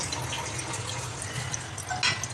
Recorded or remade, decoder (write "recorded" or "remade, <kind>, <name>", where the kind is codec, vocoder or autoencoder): recorded